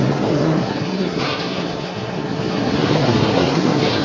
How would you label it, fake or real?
fake